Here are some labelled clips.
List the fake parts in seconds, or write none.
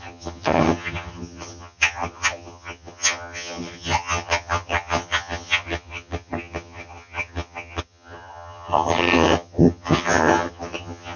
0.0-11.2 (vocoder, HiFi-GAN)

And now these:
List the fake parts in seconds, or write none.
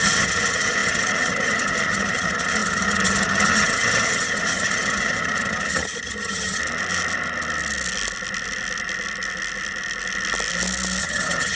0.0-6.6 (vocoder, HiFi-GAN); 11.0-11.6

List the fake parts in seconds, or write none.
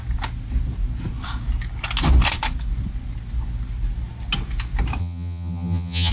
5.0-6.1 (vocoder, HiFi-GAN)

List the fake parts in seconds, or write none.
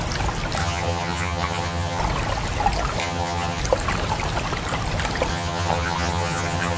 0.6-2.0 (vocoder, HiFi-GAN); 3.0-3.6; 5.3-6.8